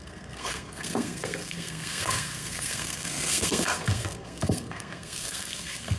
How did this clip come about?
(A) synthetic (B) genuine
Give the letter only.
A